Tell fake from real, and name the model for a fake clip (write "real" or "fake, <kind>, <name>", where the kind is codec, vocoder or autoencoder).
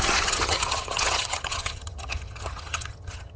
fake, vocoder, HiFi-GAN